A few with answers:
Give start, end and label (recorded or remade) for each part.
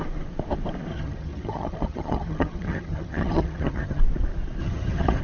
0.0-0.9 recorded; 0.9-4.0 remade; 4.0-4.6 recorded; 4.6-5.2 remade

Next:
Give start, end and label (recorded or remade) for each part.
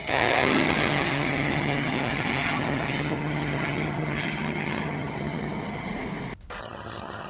0.0-5.9 remade; 5.9-6.6 recorded; 6.6-7.3 remade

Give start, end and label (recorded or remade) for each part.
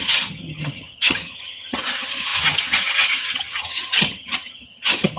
0.0-5.2 remade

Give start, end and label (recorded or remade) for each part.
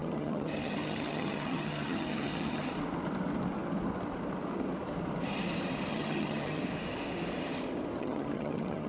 0.0-2.7 remade; 2.7-5.9 recorded; 5.9-6.6 remade; 6.6-8.0 recorded; 8.0-8.9 remade